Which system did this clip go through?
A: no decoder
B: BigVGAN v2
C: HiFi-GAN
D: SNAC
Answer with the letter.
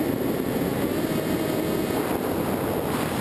A